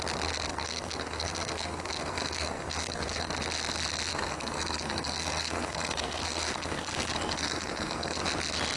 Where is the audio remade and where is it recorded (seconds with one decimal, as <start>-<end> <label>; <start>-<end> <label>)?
0.0-0.5 recorded; 0.5-3.3 remade; 3.3-4.1 recorded; 4.1-8.2 remade; 8.2-8.8 recorded